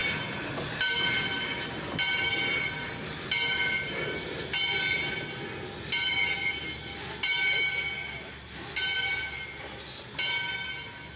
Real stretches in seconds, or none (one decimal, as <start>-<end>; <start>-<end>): 0.0-11.2